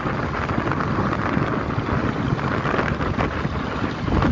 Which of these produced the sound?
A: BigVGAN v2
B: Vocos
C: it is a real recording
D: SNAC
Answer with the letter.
C